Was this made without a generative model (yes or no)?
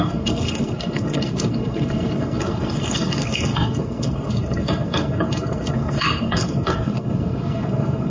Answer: no